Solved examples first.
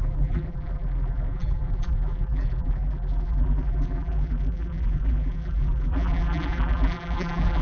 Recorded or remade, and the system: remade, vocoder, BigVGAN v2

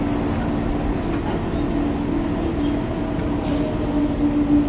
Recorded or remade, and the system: recorded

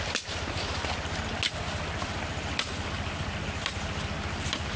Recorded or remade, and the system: recorded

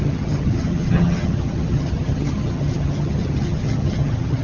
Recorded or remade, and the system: remade, vocoder, HiFi-GAN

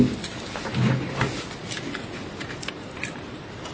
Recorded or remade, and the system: recorded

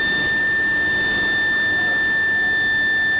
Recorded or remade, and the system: recorded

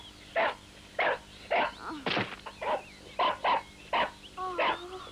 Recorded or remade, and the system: recorded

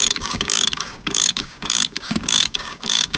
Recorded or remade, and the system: remade, codec, DAC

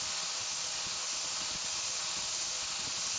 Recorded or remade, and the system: recorded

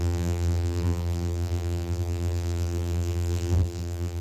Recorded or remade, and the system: remade, vocoder, BigVGAN v2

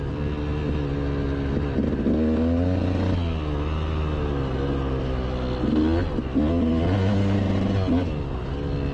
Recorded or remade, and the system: recorded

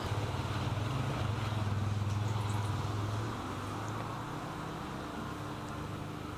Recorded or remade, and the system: recorded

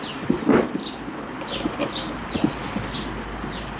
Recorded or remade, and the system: recorded